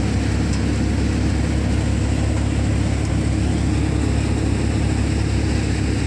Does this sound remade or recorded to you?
recorded